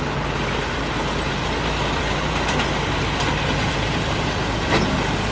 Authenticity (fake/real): real